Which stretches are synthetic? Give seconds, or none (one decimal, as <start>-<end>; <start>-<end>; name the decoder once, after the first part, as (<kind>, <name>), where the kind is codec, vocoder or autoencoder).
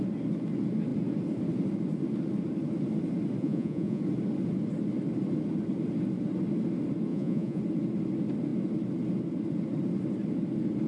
3.4-4.0 (vocoder, Vocos); 7.1-7.6